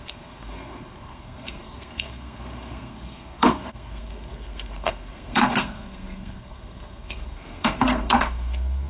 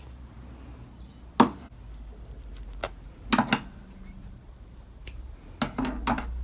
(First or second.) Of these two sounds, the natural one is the second